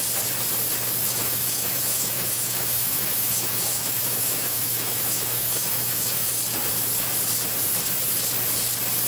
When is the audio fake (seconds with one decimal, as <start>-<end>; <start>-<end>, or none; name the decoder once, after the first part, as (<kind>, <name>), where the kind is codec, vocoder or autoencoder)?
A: 1.2-6.3 (autoencoder, DAC-VAE)

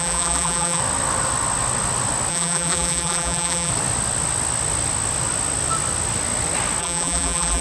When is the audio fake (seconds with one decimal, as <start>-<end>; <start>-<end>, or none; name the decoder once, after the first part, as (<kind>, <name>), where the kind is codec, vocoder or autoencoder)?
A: 0.0-0.8 (vocoder, BigVGAN v2); 2.3-3.7; 6.8-7.6

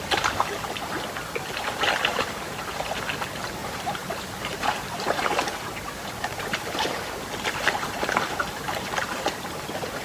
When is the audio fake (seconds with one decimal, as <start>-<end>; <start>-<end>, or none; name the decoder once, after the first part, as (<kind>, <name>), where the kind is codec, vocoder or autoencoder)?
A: 2.1-2.6 (vocoder, BigVGAN v2); 3.6-8.9

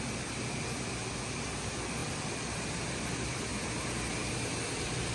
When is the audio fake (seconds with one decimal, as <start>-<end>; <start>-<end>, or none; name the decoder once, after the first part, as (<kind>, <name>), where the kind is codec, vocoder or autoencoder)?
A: 0.0-5.1 (vocoder, BigVGAN v2)